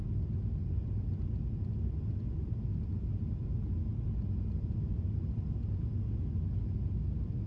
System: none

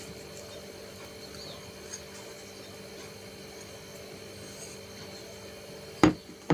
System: none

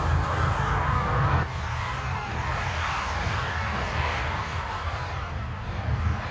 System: codec, DAC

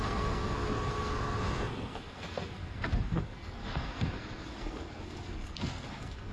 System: codec, SNAC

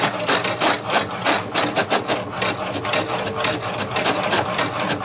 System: none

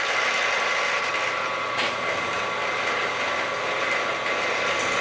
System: none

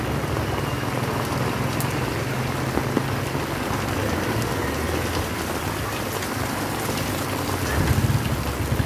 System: none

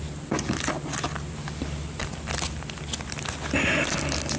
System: none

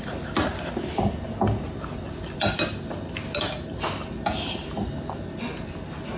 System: none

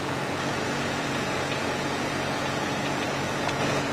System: vocoder, Vocos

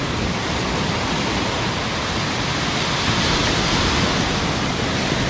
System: none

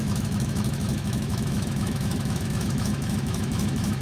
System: autoencoder, DAC-VAE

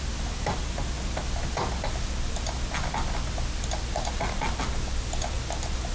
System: none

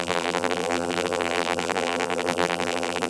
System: vocoder, BigVGAN v2